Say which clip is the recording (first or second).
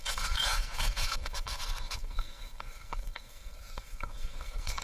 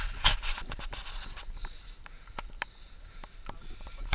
second